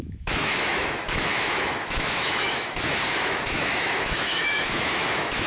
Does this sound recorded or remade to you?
remade